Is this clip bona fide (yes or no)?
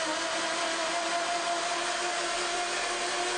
yes